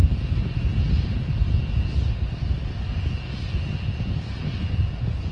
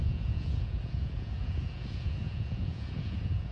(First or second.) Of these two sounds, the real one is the first